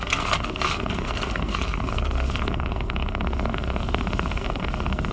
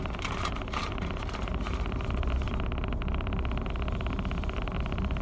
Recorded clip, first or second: second